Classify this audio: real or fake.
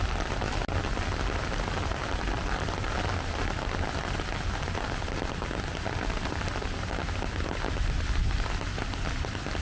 real